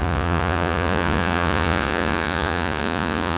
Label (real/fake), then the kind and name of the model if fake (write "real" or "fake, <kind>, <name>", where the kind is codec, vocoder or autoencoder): fake, vocoder, Vocos